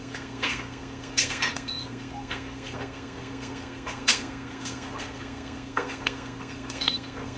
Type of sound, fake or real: fake